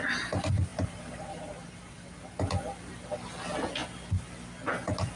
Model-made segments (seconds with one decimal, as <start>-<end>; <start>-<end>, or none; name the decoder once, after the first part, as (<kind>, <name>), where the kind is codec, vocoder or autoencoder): 0.7-1.9 (vocoder, BigVGAN v2)